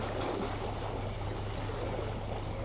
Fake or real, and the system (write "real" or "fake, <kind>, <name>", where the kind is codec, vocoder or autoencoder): real